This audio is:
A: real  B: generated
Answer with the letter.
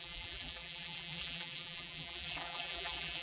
B